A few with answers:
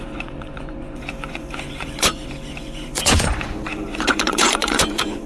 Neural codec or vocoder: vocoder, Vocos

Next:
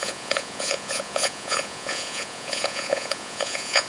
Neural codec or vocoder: vocoder, Vocos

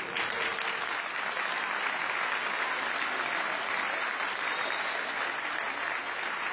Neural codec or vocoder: none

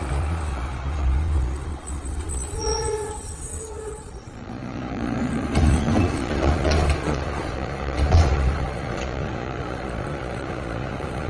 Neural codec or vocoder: vocoder, Vocos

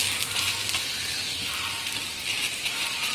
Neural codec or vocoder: none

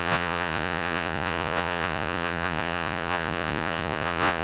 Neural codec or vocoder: vocoder, Vocos